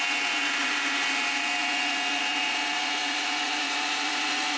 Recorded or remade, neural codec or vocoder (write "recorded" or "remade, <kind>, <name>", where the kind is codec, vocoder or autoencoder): remade, vocoder, Vocos